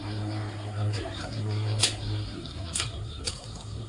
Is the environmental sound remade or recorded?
remade